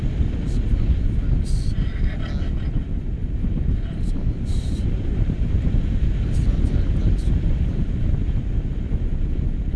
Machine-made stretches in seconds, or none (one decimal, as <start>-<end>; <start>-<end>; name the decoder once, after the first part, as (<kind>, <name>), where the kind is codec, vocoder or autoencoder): 3.2-8.4 (vocoder, BigVGAN v2)